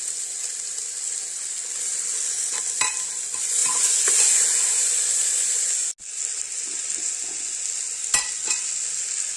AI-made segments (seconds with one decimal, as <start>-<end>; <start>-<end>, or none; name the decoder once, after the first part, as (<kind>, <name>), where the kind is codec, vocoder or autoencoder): none